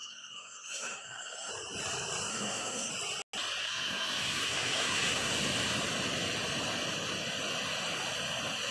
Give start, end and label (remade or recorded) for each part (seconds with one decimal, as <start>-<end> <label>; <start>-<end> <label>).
0.0-1.5 remade; 1.5-2.3 recorded; 2.3-2.9 remade; 2.9-3.6 recorded; 3.6-5.3 remade; 5.3-8.7 recorded